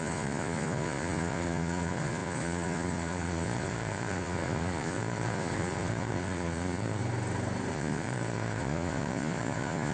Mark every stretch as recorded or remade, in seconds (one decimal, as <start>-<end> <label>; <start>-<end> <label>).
0.0-7.0 remade; 7.0-7.7 recorded; 7.7-9.9 remade